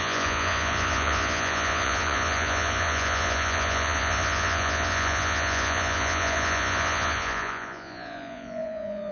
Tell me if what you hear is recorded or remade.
remade